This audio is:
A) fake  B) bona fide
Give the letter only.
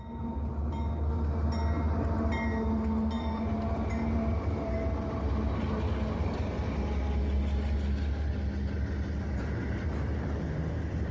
B